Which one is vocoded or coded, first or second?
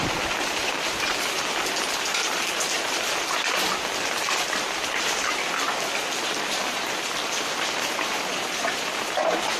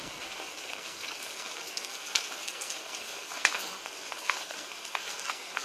second